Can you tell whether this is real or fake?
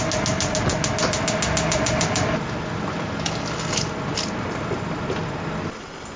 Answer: real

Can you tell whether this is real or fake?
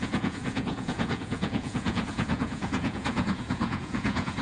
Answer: fake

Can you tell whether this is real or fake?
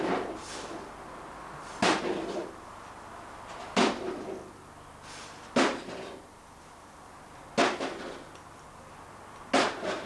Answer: real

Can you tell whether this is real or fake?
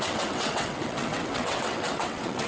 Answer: fake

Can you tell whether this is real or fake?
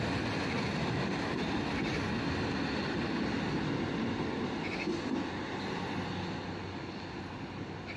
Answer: real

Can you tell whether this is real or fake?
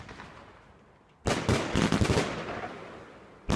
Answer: real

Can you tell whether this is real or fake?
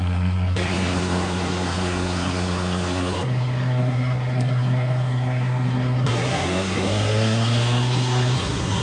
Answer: fake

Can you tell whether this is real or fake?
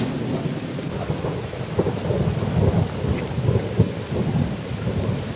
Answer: real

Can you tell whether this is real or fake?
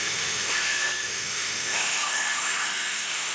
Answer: fake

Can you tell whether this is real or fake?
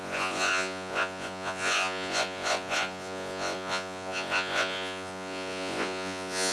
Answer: fake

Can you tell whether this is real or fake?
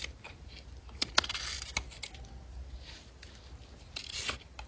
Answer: real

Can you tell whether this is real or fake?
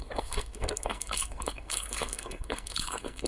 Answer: fake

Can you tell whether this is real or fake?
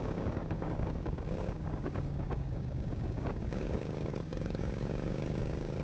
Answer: fake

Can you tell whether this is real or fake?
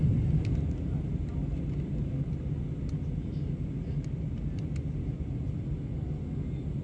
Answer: real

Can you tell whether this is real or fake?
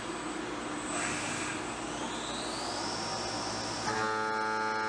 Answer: real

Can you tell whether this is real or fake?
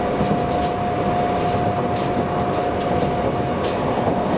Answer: real